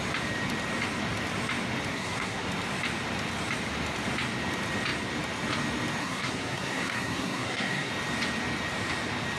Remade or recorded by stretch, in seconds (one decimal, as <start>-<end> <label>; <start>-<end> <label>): 0.0-1.9 recorded; 1.9-2.5 remade; 2.5-6.0 recorded; 6.0-7.9 remade; 7.9-9.4 recorded